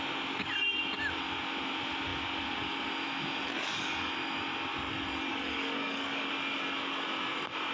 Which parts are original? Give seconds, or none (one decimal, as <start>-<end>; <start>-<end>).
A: 0.0-3.5; 4.1-5.3; 6.3-7.7